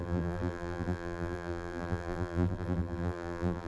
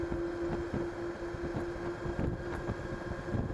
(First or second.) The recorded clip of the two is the second